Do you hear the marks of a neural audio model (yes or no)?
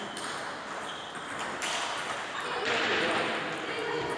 no